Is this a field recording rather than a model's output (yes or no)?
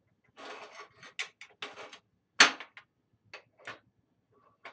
yes